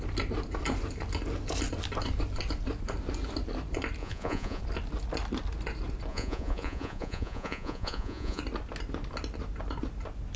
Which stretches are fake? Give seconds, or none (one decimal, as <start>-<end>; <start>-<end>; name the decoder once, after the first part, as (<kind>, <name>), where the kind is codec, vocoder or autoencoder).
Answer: 4.0-4.6 (vocoder, Vocos); 6.1-8.4